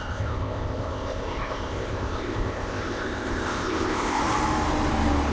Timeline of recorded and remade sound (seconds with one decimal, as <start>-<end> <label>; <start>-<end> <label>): 0.0-4.2 remade; 4.2-5.3 recorded